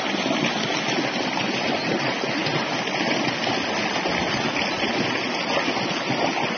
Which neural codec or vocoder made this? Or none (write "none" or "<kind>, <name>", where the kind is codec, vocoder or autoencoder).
none